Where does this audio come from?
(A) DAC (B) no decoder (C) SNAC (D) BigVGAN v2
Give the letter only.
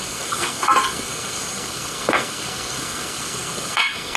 C